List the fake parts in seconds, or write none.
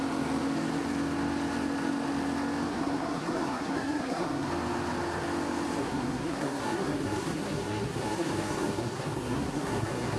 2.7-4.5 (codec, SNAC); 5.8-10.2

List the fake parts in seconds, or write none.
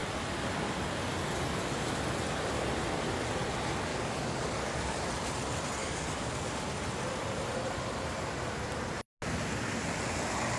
3.9-5.0 (codec, DAC); 5.8-6.5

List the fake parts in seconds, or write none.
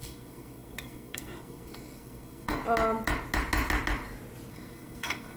0.0-2.6 (codec, SNAC); 4.5-5.4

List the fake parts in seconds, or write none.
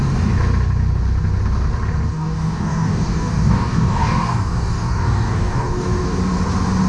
2.1-6.2 (codec, DAC)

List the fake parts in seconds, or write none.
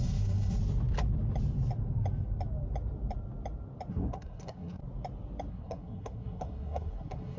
0.0-0.6 (codec, SNAC); 3.9-4.8; 5.5-7.4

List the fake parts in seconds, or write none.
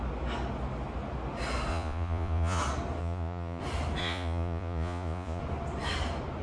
1.7-2.6 (vocoder, Vocos); 3.0-3.6; 4.0-5.4